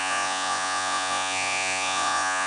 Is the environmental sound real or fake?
fake